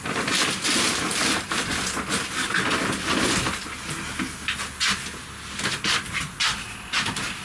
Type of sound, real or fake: real